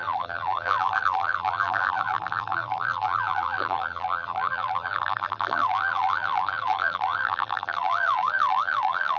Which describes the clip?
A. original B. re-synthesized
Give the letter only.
B